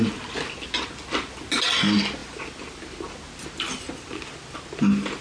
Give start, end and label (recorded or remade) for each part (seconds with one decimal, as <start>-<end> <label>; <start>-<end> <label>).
0.0-5.2 recorded